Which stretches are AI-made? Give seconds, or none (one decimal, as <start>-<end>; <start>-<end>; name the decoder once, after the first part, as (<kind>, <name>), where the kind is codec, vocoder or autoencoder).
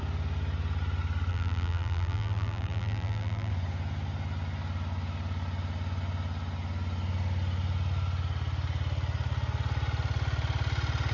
1.3-3.5 (vocoder, BigVGAN v2)